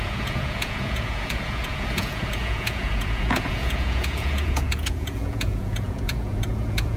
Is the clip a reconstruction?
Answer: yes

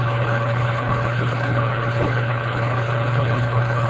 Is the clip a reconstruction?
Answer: yes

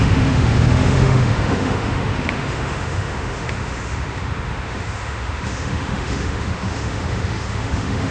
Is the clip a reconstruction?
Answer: yes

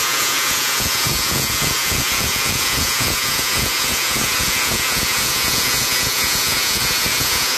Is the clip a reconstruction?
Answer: yes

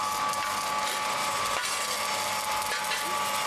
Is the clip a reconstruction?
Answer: no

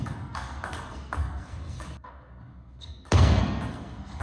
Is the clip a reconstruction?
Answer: yes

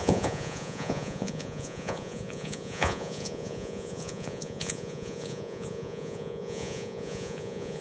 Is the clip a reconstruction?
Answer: yes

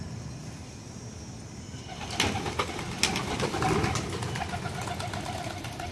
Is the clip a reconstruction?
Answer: no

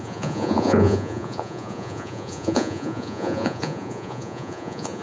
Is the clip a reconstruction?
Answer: yes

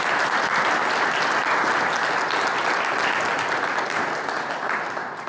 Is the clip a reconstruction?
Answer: no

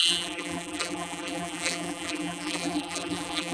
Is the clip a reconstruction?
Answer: yes